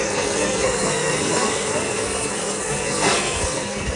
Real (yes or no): no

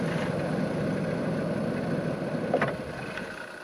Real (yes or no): yes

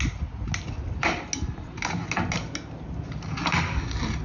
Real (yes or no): yes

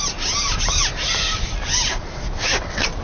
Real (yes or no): yes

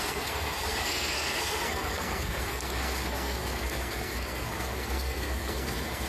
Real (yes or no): no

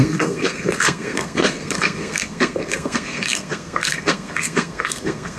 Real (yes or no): no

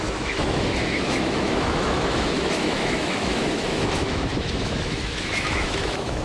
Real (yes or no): no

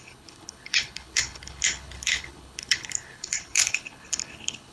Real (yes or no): no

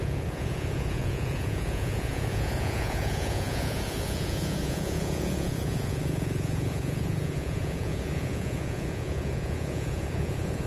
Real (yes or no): no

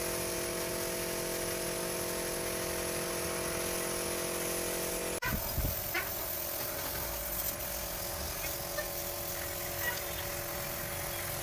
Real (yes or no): yes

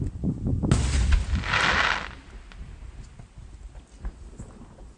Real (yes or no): yes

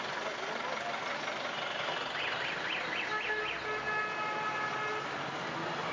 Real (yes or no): yes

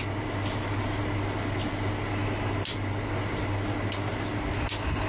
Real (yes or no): yes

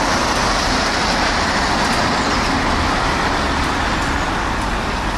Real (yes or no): yes